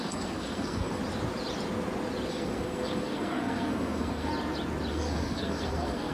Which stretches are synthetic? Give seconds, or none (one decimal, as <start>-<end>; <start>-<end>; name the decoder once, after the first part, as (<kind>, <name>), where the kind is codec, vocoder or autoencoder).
0.0-1.0 (codec, SNAC); 2.3-4.3; 4.9-6.1